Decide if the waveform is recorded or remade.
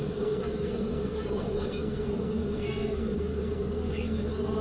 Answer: remade